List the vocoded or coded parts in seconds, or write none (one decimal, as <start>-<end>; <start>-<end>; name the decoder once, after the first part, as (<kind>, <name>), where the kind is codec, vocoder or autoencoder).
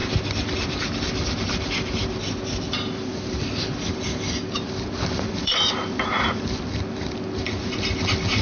0.0-8.4 (vocoder, BigVGAN v2)